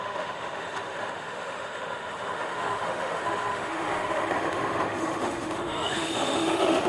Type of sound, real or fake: fake